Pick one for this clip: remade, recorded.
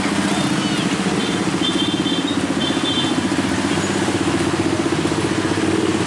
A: recorded